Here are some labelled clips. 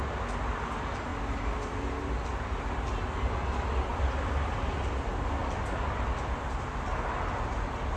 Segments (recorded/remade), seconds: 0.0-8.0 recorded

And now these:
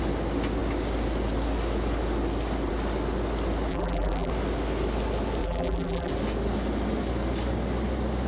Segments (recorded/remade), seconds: 0.0-3.7 recorded; 3.7-4.3 remade; 4.3-5.4 recorded; 5.4-6.1 remade; 6.1-8.3 recorded

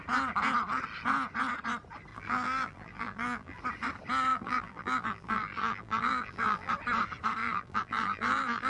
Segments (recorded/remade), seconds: 0.0-2.1 recorded; 2.1-3.6 remade; 3.6-4.3 recorded; 4.3-6.7 remade; 6.7-7.4 recorded; 7.4-8.7 remade

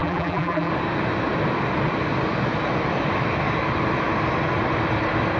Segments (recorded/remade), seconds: 0.0-0.7 remade; 0.7-5.4 recorded

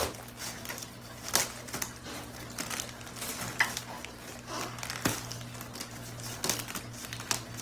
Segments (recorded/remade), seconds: 0.0-7.6 recorded